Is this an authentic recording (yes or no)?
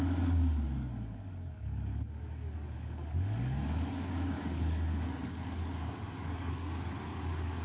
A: no